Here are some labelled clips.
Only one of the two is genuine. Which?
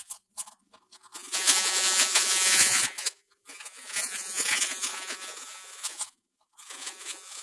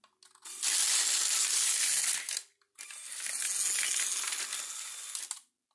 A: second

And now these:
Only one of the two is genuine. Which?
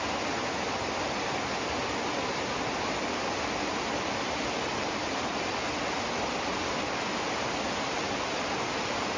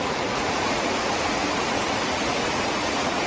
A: first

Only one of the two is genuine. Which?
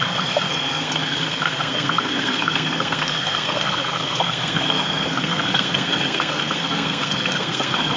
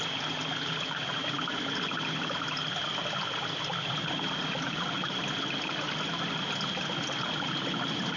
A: second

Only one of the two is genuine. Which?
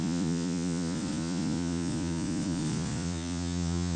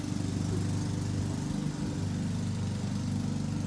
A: second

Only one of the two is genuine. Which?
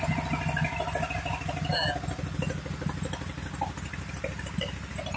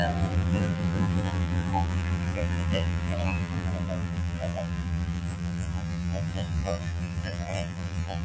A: first